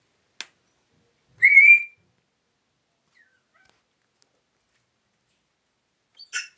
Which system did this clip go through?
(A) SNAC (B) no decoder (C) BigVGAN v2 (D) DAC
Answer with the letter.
B